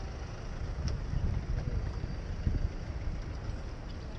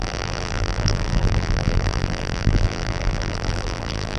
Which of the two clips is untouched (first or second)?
first